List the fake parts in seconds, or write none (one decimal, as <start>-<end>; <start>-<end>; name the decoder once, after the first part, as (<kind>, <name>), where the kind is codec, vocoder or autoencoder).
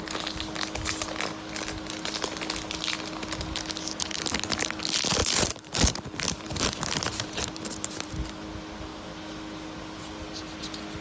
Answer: 5.2-8.1 (vocoder, BigVGAN v2)